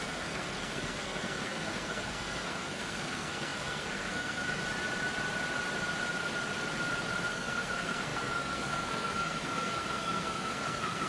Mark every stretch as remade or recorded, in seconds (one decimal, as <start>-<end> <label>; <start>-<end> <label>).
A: 0.0-4.6 remade; 4.6-7.3 recorded; 7.3-11.1 remade